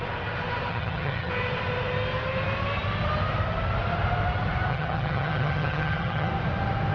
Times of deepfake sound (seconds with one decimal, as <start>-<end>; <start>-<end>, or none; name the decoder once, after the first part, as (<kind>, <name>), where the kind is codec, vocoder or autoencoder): 0.7-1.3 (vocoder, HiFi-GAN); 4.7-6.3